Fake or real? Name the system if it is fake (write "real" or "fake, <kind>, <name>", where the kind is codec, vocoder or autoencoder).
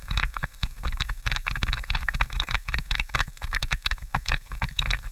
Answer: fake, codec, SNAC